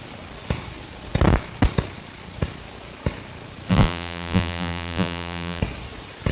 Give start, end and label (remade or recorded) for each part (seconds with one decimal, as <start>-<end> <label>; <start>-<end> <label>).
0.0-3.7 recorded; 3.7-5.6 remade; 5.6-6.3 recorded